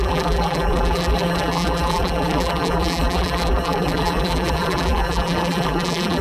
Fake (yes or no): yes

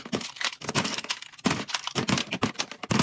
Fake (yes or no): no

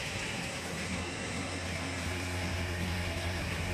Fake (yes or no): yes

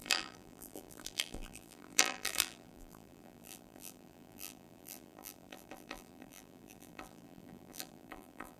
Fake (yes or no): yes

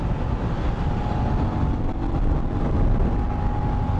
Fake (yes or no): no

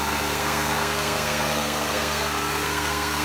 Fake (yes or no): yes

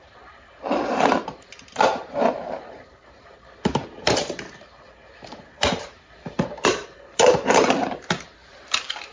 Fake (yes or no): yes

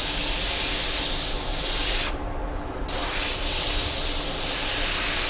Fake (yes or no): no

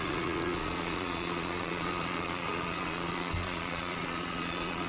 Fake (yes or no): yes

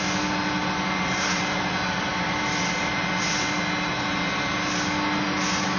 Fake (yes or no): no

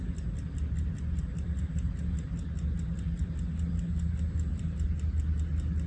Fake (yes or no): no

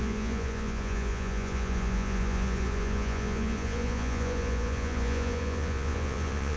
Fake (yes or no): yes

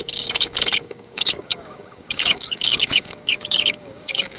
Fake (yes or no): yes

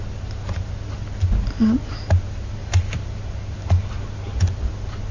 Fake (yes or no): no